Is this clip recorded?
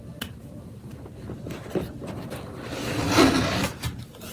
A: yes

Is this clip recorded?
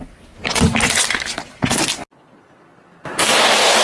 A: yes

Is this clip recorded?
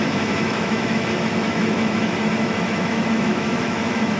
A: no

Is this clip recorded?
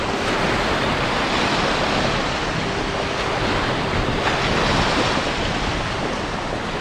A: yes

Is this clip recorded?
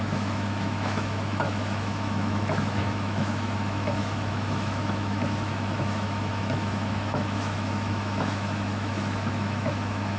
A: no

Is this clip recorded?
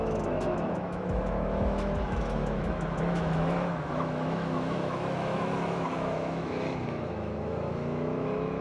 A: no